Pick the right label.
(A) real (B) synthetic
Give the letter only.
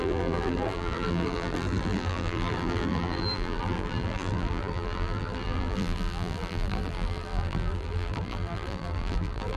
B